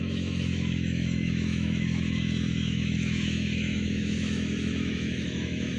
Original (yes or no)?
no